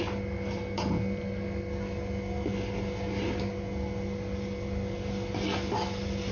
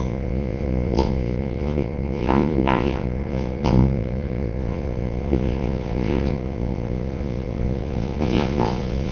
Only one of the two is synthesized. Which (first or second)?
second